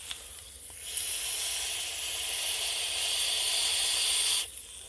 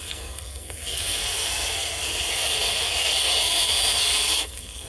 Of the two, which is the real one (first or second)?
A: first